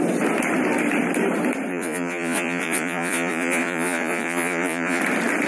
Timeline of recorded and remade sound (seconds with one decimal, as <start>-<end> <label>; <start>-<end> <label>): 0.0-1.7 recorded; 1.7-5.0 remade; 5.0-5.5 recorded